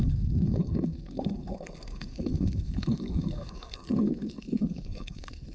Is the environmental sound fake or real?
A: fake